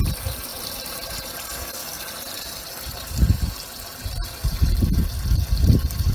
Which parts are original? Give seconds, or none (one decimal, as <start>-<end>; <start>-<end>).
0.0-0.5; 1.1-6.1